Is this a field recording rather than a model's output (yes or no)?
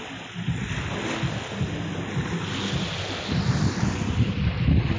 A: yes